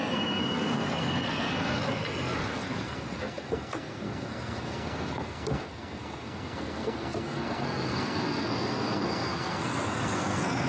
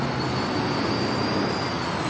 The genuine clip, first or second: second